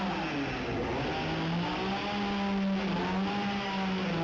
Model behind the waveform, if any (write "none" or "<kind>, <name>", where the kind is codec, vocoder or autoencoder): none